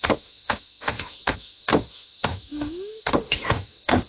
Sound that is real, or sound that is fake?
fake